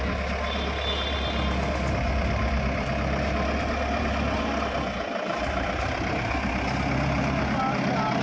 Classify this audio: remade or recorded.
recorded